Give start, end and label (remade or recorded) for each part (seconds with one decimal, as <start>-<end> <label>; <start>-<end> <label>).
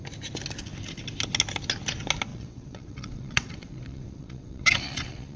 0.0-2.3 recorded; 2.3-5.4 remade